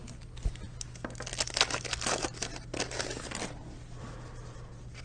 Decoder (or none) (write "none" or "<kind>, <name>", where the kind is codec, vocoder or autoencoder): none